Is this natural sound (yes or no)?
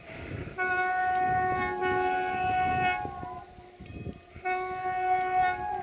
yes